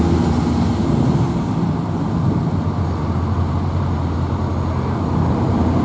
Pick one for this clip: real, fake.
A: real